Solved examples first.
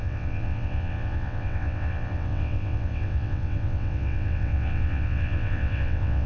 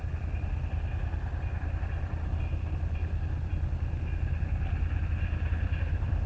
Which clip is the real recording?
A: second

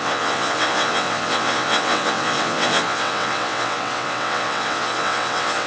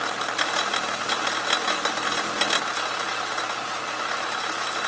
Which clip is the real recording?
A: second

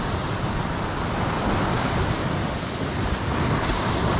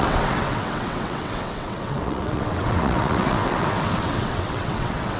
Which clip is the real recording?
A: first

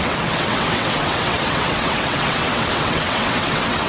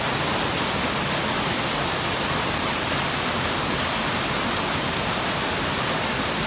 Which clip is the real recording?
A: second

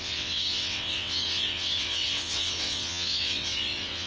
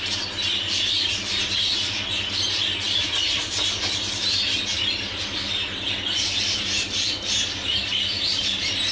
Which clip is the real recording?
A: second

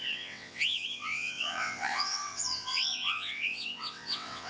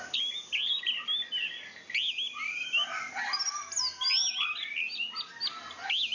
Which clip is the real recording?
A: second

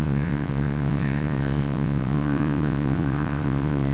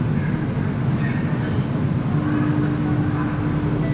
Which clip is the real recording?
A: second